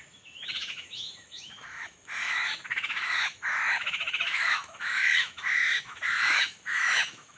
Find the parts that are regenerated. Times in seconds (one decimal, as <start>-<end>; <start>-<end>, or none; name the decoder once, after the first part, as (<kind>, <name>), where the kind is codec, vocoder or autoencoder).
0.0-7.4 (autoencoder, DAC-VAE)